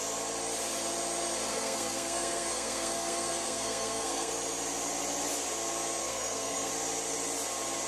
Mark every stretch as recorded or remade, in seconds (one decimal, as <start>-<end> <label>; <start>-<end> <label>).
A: 0.0-1.5 recorded; 1.5-4.3 remade; 4.3-6.0 recorded; 6.0-6.7 remade; 6.7-7.9 recorded